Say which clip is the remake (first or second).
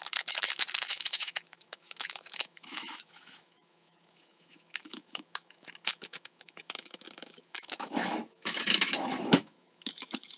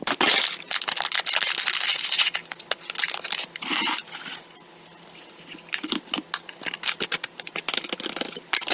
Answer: first